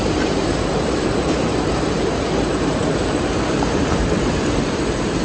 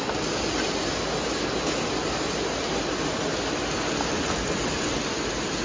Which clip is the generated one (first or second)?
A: first